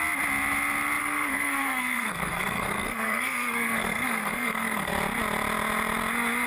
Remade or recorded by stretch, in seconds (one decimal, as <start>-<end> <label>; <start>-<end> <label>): 0.0-1.0 recorded; 1.0-4.9 remade; 4.9-6.5 recorded

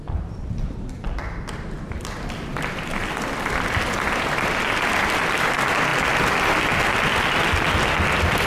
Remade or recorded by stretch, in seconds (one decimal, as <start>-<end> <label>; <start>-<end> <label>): 0.0-8.5 recorded

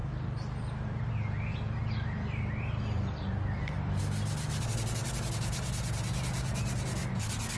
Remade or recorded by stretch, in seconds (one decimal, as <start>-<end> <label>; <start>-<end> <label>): 0.0-1.1 remade; 1.1-1.5 recorded; 1.5-4.0 remade; 4.0-7.6 recorded

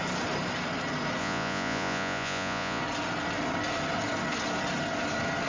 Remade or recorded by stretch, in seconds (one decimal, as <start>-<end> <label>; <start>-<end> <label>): 0.0-1.2 recorded; 1.2-2.8 remade; 2.8-5.5 recorded

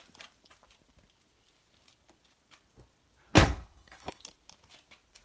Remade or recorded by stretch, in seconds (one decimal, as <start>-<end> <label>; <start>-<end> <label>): 0.0-3.4 recorded; 3.4-4.2 remade; 4.2-5.2 recorded

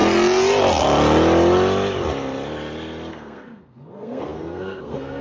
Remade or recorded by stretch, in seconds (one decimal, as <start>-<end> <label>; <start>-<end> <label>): 0.0-3.1 recorded; 3.1-5.2 remade